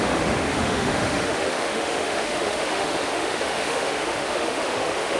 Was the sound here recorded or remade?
remade